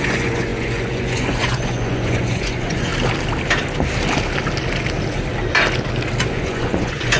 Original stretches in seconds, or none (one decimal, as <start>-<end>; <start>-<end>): 2.9-6.3